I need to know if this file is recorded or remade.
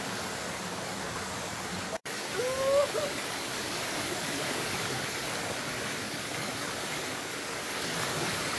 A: remade